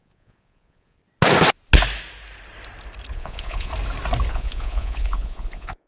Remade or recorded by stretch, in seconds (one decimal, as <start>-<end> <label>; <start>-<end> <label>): 0.0-1.0 remade; 1.0-3.1 recorded; 3.1-3.7 remade; 3.7-4.3 recorded; 4.3-5.9 remade